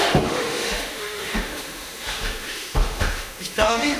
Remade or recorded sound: remade